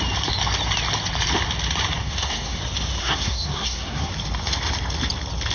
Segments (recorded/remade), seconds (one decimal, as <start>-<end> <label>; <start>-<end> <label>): 0.0-2.0 recorded; 2.0-2.6 remade; 2.6-3.0 recorded; 3.0-4.1 remade; 4.1-5.5 recorded